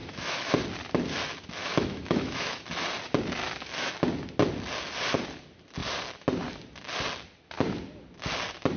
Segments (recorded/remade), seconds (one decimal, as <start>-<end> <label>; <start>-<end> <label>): 0.0-0.5 remade; 0.5-1.6 recorded; 1.6-2.6 remade; 2.6-3.4 recorded; 3.4-3.9 remade; 3.9-8.8 recorded